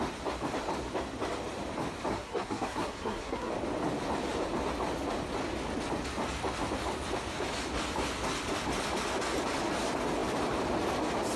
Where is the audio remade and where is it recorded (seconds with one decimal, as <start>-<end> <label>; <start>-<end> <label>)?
0.0-2.1 recorded; 2.1-3.5 remade; 3.5-11.4 recorded